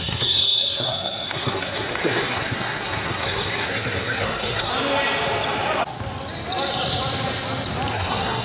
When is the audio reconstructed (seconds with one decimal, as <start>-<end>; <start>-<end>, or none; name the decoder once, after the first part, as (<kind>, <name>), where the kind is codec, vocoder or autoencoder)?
0.0-4.7 (codec, SNAC); 7.9-8.4